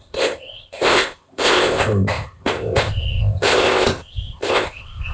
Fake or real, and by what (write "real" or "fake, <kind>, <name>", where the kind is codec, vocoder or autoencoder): fake, codec, ZipCodec